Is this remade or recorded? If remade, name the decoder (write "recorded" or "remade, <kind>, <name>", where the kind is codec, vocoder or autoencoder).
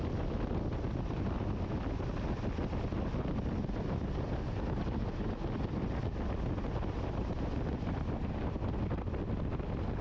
recorded